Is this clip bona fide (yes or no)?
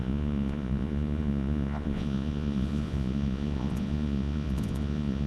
no